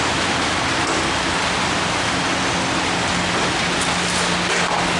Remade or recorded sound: recorded